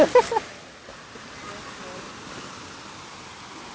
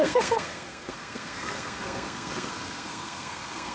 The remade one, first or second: second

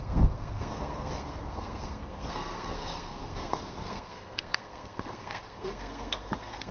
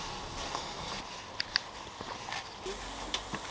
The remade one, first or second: first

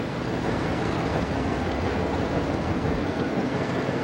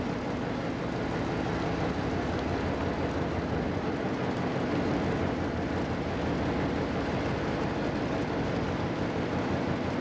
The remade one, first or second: first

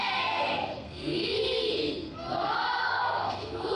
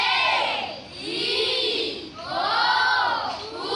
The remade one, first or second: first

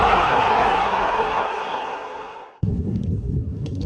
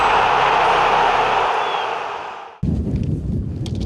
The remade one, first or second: first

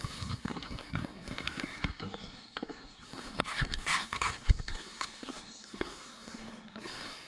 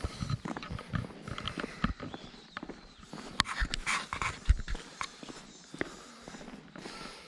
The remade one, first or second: first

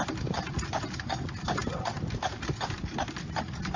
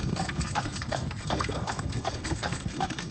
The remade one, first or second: second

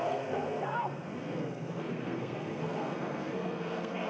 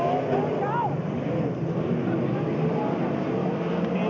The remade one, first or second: first